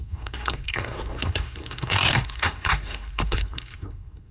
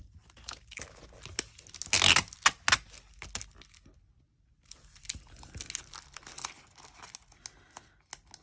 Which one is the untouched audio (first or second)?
second